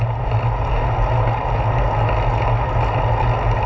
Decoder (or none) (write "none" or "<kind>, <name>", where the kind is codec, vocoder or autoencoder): none